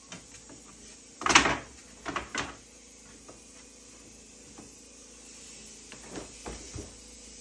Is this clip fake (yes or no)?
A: no